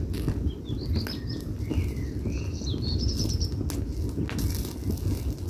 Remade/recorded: recorded